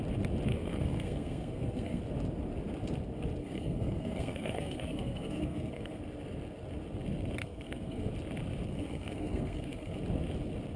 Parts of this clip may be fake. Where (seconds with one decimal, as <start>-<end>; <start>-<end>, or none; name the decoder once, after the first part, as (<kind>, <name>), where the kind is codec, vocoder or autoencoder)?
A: 0.5-2.0 (codec, SNAC); 3.4-6.0; 7.4-8.1; 8.7-10.0